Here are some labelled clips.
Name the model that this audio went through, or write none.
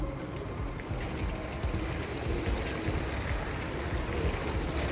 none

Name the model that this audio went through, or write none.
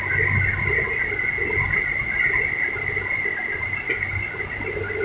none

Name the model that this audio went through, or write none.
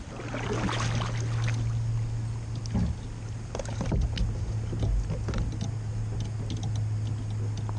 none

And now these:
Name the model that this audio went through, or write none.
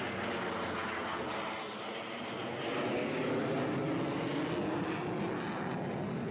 none